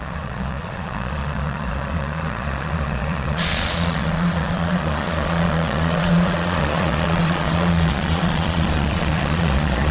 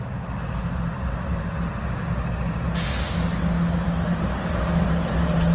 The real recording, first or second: second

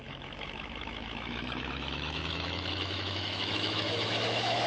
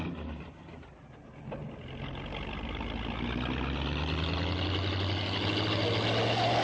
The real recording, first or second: second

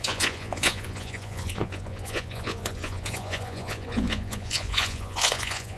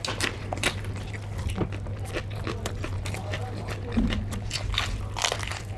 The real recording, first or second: second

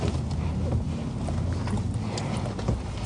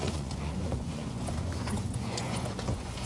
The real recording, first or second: first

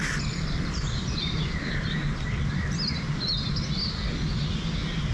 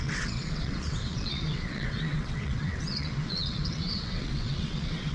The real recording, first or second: first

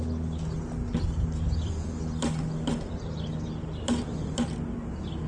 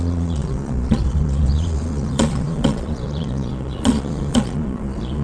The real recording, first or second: first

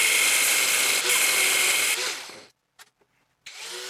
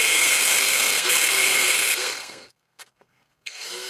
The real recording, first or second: first